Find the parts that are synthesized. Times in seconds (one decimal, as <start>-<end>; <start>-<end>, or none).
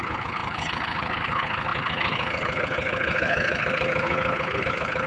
0.0-5.1